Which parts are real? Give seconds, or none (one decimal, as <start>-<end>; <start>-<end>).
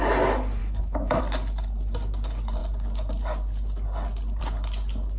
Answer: 0.0-0.6; 1.2-5.2